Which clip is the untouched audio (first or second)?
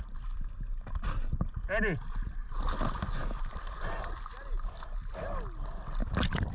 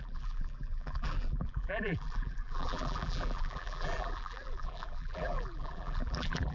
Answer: first